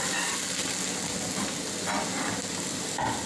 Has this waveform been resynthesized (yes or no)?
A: no